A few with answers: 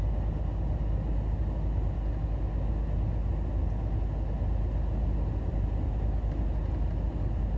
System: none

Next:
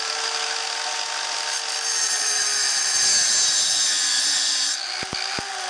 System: none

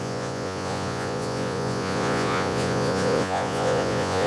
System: vocoder, Vocos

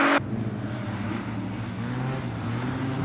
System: none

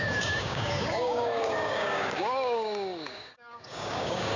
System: codec, DAC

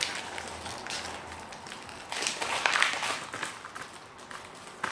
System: none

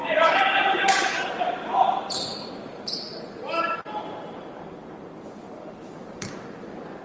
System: none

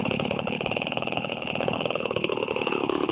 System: codec, HILCodec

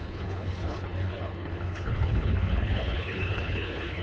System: codec, HILCodec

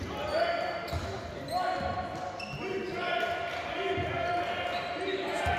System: none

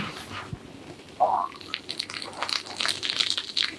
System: none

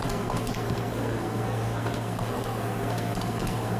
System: codec, SNAC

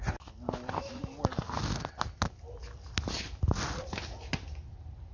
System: none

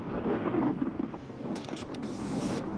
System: codec, DAC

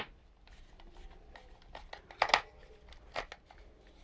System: none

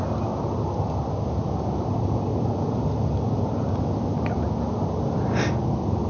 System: none